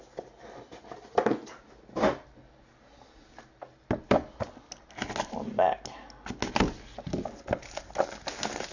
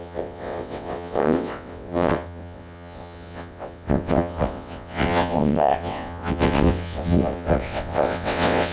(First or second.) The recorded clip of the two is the first